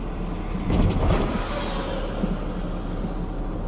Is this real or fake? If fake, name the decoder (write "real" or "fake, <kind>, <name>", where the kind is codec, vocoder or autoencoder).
real